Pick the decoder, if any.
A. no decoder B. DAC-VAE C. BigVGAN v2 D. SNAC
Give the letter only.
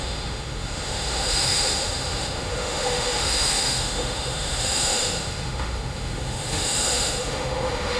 B